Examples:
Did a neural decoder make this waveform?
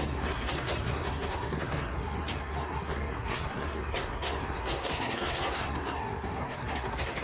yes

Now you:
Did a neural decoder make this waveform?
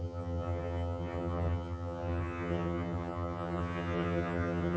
yes